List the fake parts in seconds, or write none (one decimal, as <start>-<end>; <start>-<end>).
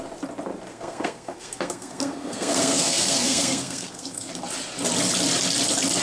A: 0.7-4.3